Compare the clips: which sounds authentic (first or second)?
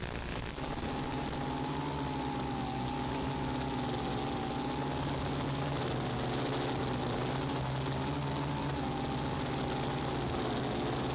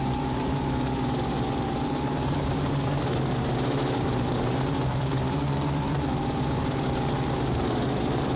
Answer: first